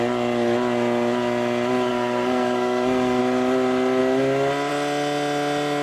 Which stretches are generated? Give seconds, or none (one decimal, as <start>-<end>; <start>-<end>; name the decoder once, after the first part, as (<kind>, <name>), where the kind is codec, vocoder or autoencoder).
1.9-3.2 (codec, SNAC)